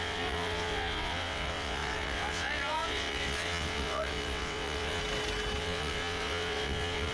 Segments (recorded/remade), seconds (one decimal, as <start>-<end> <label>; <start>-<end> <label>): 0.0-5.0 remade; 5.0-5.6 recorded; 5.6-7.1 remade